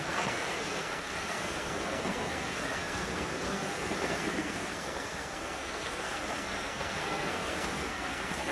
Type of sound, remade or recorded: remade